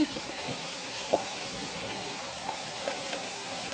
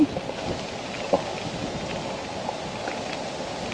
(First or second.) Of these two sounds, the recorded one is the second